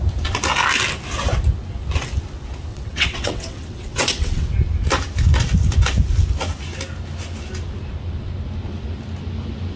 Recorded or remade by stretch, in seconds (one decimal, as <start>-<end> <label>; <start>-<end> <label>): 0.0-2.7 recorded; 2.7-4.5 remade; 4.5-9.8 recorded